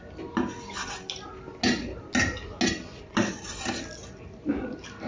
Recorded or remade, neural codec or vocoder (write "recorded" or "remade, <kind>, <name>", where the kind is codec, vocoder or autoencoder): recorded